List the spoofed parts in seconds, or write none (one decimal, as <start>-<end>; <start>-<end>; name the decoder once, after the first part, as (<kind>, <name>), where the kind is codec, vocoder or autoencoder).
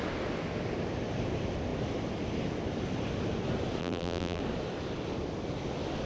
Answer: 3.8-4.4 (vocoder, BigVGAN v2)